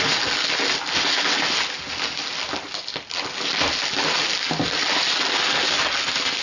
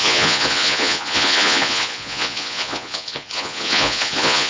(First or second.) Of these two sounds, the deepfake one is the second